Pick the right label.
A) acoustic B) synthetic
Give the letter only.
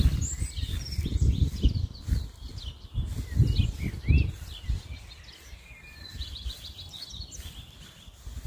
A